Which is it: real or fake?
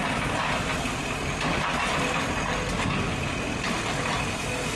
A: real